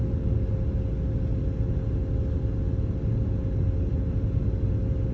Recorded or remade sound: recorded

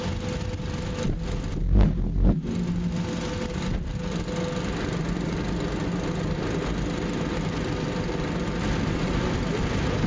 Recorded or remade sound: recorded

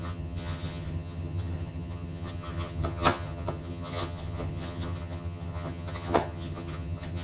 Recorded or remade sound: remade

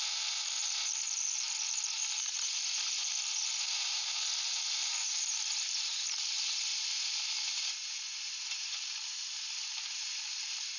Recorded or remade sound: recorded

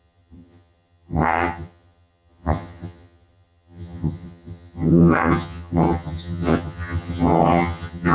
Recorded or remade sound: remade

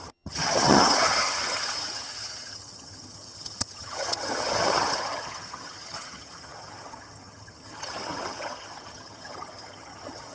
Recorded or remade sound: remade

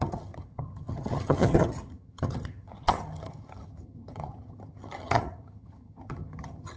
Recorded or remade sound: remade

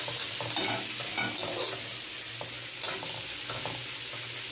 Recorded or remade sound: recorded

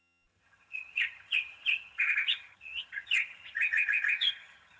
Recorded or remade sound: remade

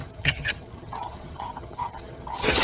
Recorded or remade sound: remade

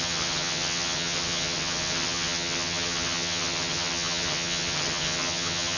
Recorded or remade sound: remade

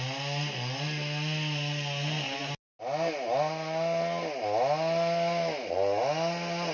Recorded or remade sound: recorded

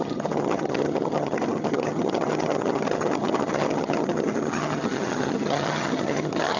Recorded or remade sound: remade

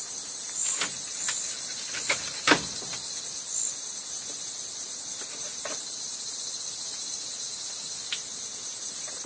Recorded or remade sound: recorded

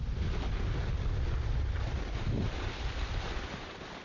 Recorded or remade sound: recorded